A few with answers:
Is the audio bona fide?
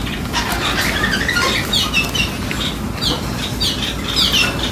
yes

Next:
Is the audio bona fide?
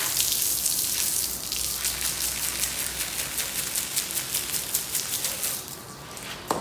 yes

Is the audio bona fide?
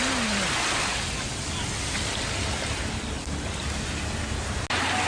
yes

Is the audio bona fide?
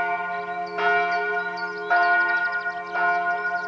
yes